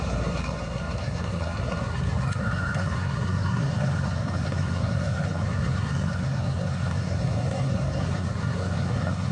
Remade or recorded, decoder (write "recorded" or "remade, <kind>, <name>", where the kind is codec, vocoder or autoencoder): remade, codec, SNAC